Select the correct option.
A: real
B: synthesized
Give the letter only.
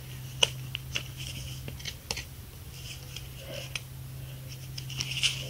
A